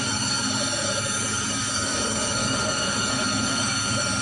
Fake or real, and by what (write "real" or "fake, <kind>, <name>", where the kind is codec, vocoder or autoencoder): fake, codec, DAC